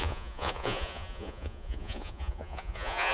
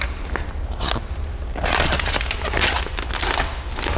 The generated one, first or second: first